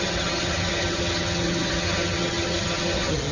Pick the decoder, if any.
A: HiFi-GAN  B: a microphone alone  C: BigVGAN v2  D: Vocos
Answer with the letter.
A